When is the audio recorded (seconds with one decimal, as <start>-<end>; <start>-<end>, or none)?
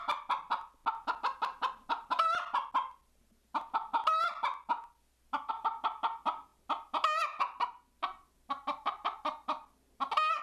0.0-10.4